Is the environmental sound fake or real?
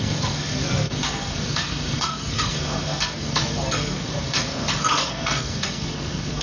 fake